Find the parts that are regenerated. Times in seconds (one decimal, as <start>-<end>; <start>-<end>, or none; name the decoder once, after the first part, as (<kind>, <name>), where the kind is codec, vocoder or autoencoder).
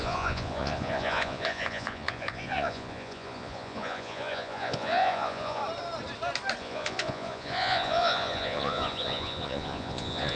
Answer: 0.0-5.6 (vocoder, Vocos); 6.6-10.4